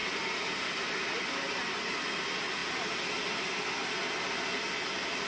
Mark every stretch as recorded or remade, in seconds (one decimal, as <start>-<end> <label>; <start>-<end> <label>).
0.0-5.3 recorded